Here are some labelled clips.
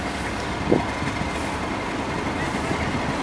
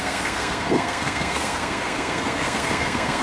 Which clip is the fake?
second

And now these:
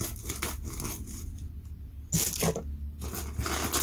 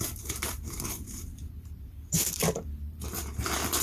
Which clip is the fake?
second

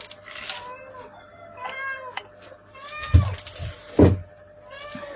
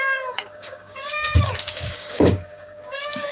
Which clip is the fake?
second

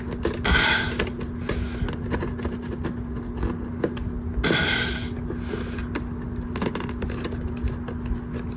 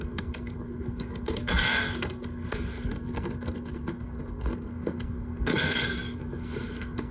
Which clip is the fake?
second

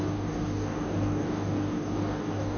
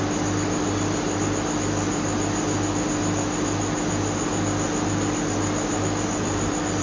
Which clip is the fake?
first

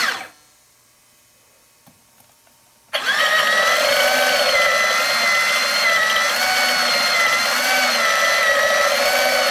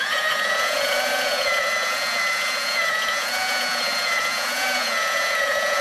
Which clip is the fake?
second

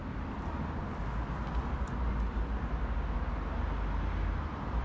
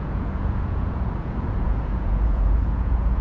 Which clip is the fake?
second